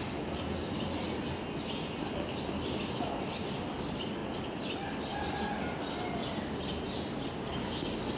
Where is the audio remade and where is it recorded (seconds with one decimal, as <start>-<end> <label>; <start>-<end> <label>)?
0.0-8.2 recorded